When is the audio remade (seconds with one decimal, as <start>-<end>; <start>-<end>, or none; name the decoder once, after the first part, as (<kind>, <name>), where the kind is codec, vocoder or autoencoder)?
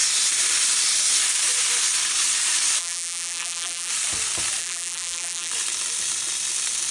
2.8-3.9 (vocoder, BigVGAN v2); 4.6-5.5